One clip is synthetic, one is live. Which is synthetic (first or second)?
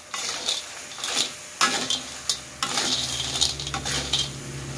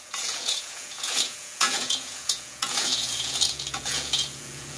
second